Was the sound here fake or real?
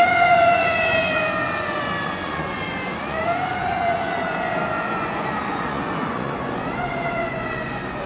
fake